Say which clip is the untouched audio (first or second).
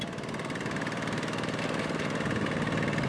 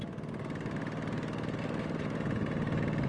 second